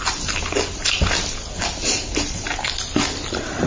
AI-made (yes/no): no